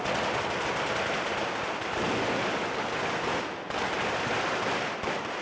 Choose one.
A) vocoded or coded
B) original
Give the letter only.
B